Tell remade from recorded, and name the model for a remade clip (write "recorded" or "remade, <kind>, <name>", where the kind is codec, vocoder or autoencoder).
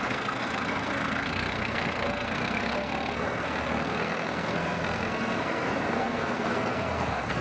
remade, codec, SNAC